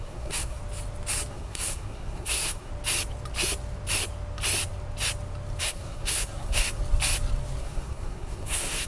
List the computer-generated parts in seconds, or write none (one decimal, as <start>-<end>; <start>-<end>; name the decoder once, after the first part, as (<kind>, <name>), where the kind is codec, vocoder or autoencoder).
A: 0.0-0.6 (codec, SNAC); 1.3-2.7; 5.6-6.8; 7.6-8.9